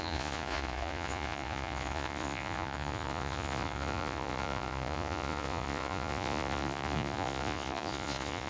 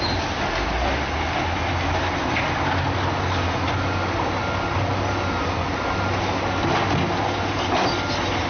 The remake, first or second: first